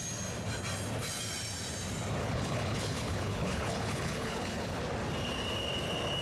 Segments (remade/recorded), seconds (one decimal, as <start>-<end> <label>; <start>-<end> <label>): 0.0-2.2 recorded; 2.2-4.8 remade; 4.8-6.2 recorded